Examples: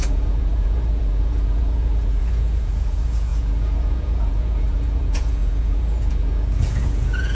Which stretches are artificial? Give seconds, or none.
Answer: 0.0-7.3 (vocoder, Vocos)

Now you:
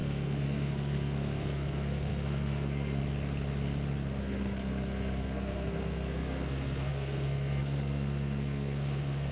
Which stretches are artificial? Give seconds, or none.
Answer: 0.0-3.0 (codec, SNAC); 4.2-9.3

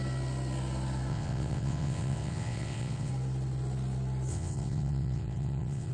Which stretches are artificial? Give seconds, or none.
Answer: 1.1-3.1 (vocoder, WaveNeXt); 4.3-5.9